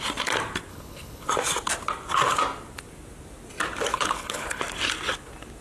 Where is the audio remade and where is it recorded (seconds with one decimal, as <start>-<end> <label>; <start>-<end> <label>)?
0.0-0.7 recorded; 0.7-1.3 remade; 1.3-3.9 recorded; 3.9-4.6 remade; 4.6-5.6 recorded